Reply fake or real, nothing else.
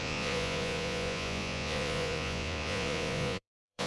fake